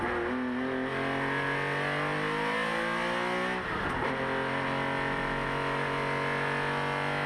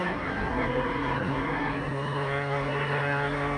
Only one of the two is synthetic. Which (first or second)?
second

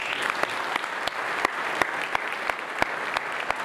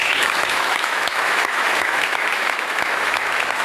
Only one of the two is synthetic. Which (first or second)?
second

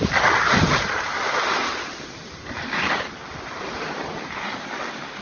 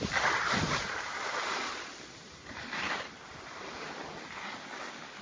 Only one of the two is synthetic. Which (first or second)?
second